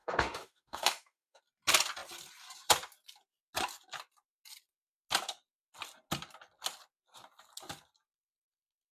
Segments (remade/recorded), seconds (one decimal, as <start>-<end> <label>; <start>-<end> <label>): 0.0-1.4 remade; 1.4-8.9 recorded